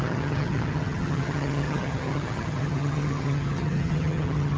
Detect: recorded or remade remade